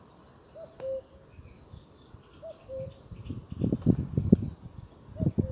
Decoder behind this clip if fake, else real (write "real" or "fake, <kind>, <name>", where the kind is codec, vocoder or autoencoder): real